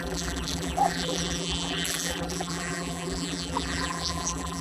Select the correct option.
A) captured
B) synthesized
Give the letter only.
B